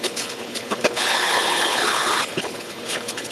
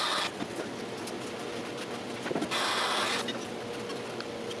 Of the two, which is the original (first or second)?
second